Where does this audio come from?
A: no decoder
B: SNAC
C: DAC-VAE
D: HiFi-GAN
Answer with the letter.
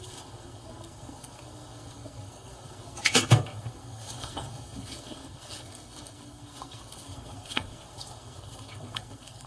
B